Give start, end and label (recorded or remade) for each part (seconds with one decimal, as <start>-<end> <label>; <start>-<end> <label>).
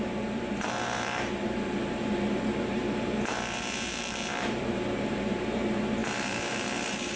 0.0-7.2 remade